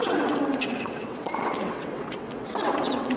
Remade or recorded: remade